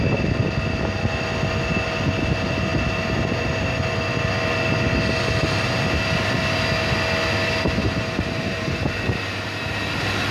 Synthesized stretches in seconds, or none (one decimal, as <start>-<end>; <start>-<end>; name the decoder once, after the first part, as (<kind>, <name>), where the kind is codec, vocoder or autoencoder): 7.8-9.9 (vocoder, BigVGAN v2)